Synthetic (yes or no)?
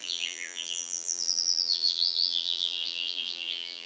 yes